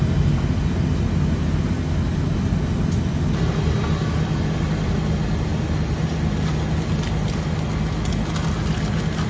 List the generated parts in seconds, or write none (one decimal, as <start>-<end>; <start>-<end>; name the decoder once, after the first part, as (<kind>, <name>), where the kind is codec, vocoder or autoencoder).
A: none